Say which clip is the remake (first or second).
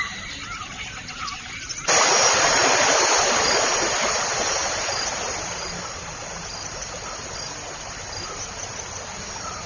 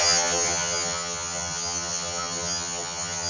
second